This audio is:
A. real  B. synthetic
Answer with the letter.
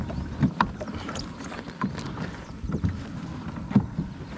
A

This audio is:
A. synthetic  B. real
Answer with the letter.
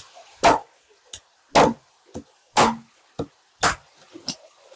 B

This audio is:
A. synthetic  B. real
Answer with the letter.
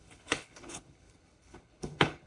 A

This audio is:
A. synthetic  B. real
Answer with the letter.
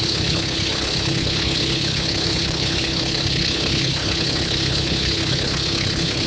A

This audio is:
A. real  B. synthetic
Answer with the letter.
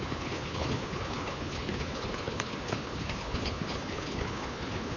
B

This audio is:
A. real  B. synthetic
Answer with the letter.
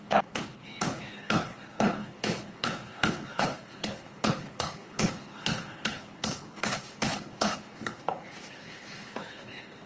B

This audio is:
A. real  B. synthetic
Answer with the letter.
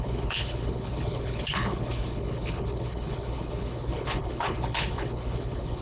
B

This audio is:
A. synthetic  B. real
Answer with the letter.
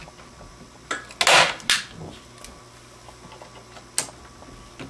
B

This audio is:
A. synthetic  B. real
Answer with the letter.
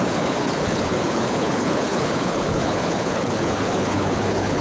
A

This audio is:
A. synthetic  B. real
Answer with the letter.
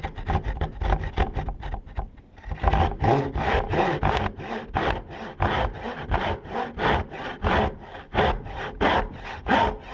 B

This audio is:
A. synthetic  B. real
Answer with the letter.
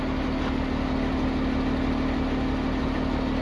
B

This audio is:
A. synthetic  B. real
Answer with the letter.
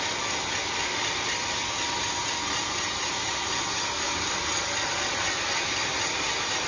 B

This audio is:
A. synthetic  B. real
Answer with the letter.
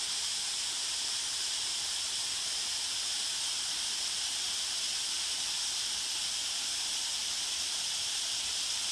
B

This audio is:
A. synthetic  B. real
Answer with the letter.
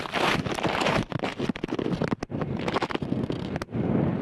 B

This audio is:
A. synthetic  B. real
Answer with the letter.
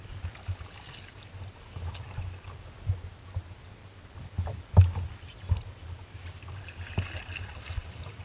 B